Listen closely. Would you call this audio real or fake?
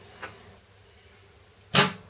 real